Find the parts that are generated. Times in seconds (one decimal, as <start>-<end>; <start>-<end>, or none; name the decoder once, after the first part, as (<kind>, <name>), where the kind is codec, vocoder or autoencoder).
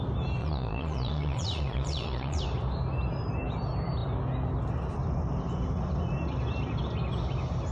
0.4-2.4 (vocoder, Vocos)